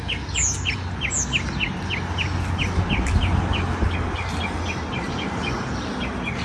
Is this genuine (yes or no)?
yes